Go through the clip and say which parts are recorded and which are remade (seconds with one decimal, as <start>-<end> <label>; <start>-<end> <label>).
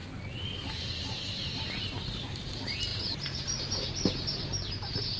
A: 0.0-2.5 recorded; 2.5-5.2 remade